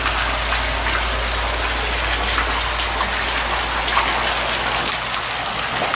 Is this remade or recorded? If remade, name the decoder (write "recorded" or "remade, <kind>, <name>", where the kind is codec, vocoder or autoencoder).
recorded